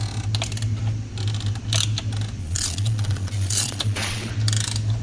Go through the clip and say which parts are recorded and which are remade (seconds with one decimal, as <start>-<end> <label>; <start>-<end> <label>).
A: 0.0-2.4 recorded; 2.4-4.3 remade; 4.3-5.0 recorded